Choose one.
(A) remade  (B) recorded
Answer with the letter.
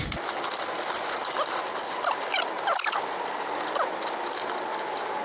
B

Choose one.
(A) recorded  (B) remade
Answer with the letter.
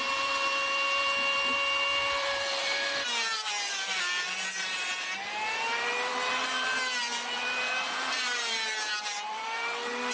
B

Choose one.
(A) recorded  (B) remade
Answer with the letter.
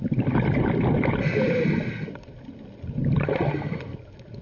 A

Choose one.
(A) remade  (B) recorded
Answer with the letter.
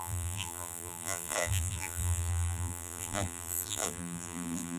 A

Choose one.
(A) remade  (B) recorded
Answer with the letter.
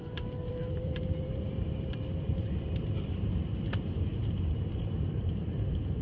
A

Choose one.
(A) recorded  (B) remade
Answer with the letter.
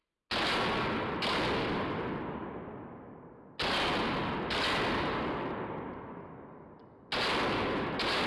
A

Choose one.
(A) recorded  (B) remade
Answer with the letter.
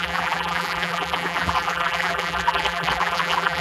B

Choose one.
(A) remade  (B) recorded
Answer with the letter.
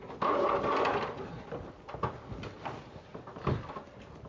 B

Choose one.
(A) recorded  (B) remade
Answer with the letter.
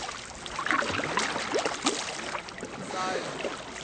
A